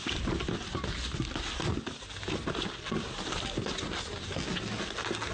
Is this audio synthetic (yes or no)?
no